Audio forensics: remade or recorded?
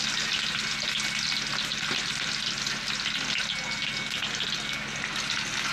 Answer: recorded